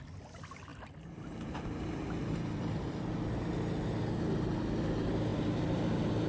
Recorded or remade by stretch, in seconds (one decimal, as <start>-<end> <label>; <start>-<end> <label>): 0.0-0.7 recorded; 0.7-1.3 remade; 1.3-2.2 recorded; 2.2-3.4 remade; 3.4-5.3 recorded; 5.3-6.3 remade